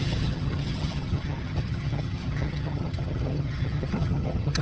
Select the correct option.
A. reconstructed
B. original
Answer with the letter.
A